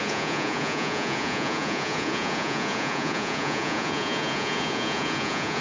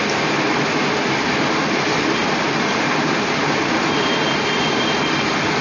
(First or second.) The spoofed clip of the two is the first